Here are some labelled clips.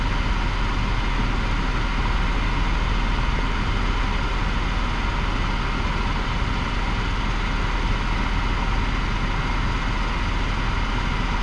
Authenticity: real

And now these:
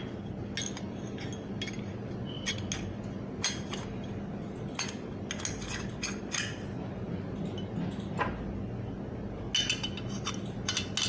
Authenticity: real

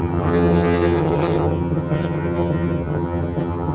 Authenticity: fake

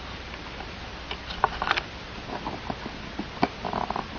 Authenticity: real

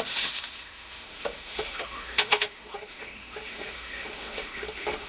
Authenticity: fake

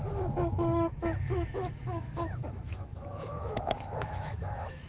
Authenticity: fake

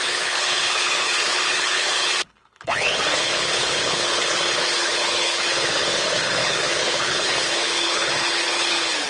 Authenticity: fake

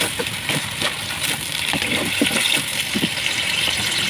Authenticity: real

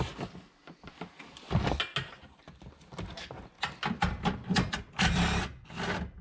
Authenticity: real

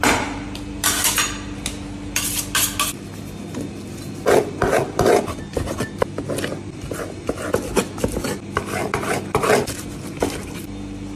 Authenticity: real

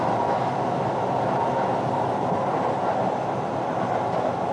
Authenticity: real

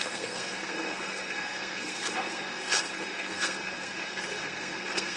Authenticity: fake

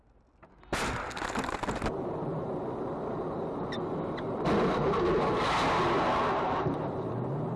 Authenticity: real